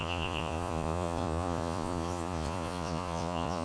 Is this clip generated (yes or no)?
yes